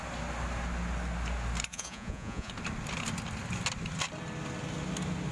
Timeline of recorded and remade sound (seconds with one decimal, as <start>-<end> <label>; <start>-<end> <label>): 0.0-1.7 recorded; 1.7-2.5 remade; 2.5-5.3 recorded